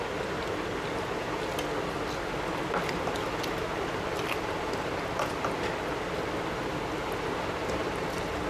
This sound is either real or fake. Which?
real